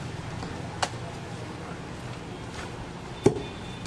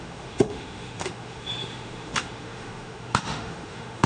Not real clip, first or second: second